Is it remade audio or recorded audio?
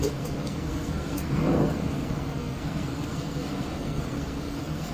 remade